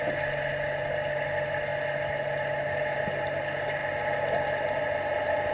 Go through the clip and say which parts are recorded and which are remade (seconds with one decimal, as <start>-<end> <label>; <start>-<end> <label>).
0.0-5.5 recorded